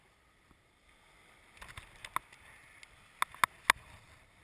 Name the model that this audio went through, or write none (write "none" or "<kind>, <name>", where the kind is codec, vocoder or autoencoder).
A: none